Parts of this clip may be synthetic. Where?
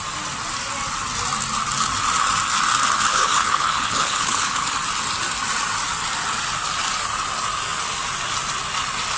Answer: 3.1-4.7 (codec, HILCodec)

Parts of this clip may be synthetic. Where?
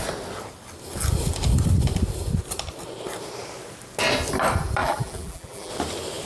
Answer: 4.8-5.7 (vocoder, BigVGAN v2)